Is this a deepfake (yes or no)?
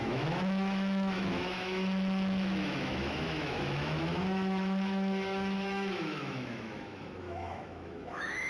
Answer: yes